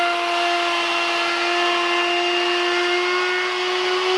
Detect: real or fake real